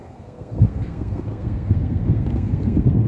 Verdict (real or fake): fake